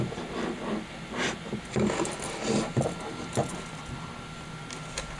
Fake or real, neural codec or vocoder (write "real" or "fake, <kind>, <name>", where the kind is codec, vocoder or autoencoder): real